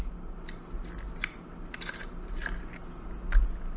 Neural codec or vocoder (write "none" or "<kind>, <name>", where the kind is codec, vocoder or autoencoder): none